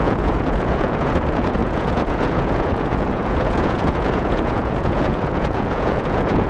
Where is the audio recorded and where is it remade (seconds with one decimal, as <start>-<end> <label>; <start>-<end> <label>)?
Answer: 0.0-6.5 remade